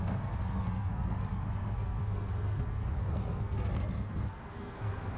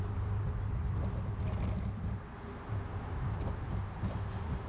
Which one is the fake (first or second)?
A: first